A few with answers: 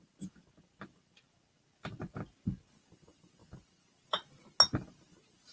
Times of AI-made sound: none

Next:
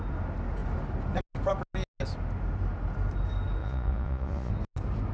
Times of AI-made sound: 3.6-4.5 (vocoder, Vocos)

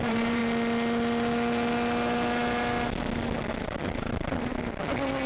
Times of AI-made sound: 0.0-0.4 (vocoder, BigVGAN v2); 3.6-4.5

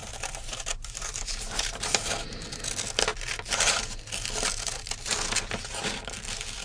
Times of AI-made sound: 0.0-2.1 (vocoder, BigVGAN v2)

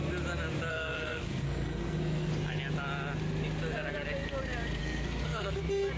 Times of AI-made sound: 0.7-2.3 (codec, SNAC); 4.8-5.6

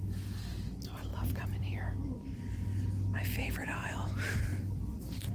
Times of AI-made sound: 1.1-3.9 (vocoder, BigVGAN v2); 4.5-5.3

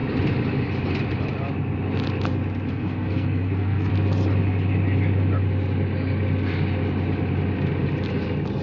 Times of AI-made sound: 2.7-3.9 (codec, SNAC)

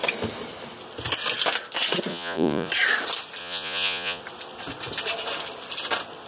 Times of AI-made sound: 2.1-2.7 (vocoder, Vocos); 3.4-4.2